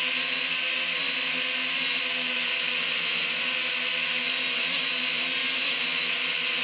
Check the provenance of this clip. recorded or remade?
recorded